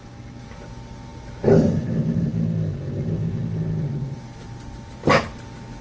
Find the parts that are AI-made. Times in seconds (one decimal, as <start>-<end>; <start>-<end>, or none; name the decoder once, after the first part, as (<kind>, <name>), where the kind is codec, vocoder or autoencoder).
none